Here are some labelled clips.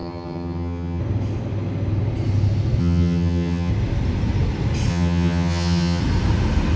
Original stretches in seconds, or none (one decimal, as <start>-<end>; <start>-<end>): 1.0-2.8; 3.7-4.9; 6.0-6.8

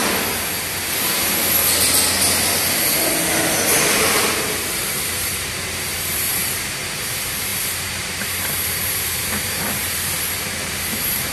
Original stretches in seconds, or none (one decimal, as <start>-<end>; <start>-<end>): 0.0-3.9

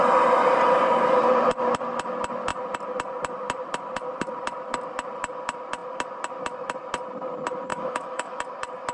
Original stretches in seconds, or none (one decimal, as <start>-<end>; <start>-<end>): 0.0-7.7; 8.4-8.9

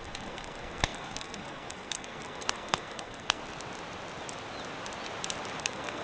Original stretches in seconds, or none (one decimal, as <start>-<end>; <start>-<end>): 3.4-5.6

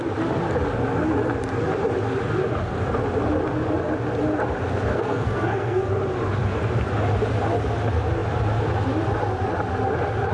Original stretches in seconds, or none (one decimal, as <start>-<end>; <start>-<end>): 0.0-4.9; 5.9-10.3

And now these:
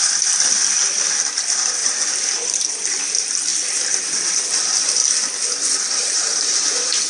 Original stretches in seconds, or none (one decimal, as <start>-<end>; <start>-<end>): 0.0-1.8; 3.0-6.0

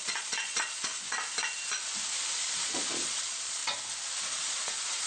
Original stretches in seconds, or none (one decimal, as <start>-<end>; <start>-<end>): 0.9-2.2; 3.6-4.2